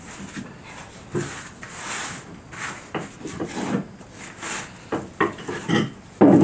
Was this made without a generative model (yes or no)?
yes